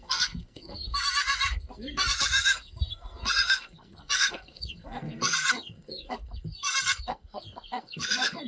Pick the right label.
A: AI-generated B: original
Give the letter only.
A